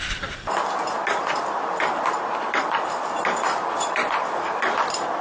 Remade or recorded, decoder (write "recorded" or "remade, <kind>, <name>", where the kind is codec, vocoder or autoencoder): recorded